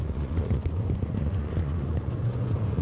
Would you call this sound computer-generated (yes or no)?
yes